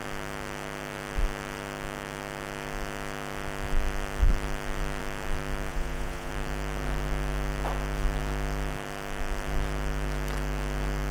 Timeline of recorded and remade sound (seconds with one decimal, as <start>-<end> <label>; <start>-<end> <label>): 0.0-5.7 recorded; 5.7-6.3 remade; 6.3-11.1 recorded